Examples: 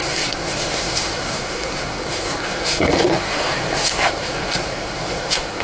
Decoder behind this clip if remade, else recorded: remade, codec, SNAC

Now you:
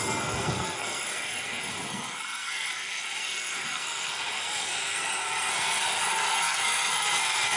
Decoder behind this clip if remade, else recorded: remade, codec, SNAC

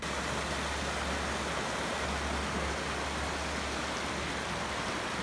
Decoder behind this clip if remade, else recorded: recorded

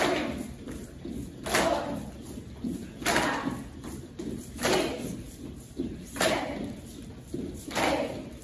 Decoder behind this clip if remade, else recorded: recorded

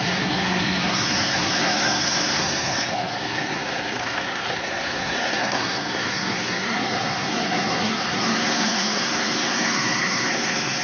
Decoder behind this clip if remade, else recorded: remade, codec, SNAC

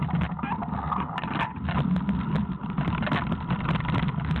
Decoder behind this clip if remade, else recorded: recorded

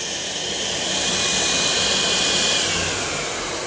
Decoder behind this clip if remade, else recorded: recorded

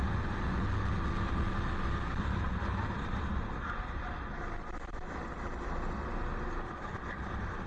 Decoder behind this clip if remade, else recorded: recorded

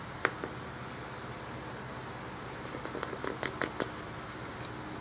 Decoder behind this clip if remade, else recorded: recorded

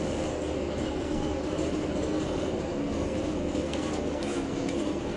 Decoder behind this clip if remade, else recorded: remade, codec, SNAC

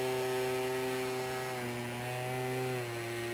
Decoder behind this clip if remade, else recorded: recorded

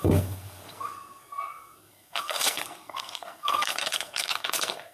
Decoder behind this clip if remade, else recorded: remade, codec, SNAC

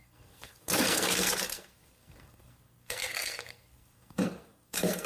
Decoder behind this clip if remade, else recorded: remade, codec, SNAC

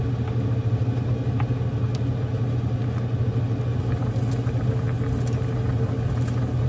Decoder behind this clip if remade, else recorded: recorded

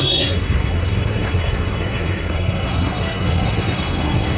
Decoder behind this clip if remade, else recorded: remade, codec, SNAC